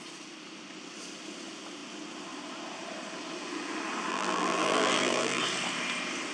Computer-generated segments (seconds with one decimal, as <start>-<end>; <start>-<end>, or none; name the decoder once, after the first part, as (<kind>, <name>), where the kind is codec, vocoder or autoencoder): 4.1-5.4 (vocoder, BigVGAN v2)